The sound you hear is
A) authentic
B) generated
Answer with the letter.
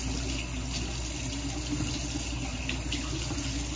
A